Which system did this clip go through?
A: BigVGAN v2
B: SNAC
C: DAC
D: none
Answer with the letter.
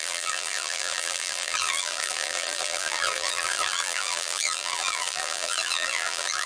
A